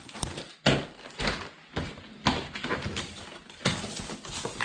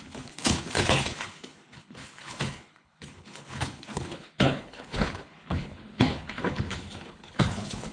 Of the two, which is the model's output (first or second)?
second